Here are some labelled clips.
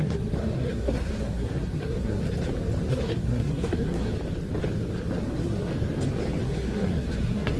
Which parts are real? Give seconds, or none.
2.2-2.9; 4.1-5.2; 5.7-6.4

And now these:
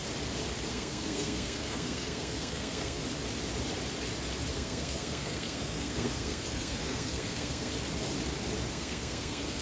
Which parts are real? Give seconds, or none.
0.0-0.7; 3.0-4.5; 7.7-8.7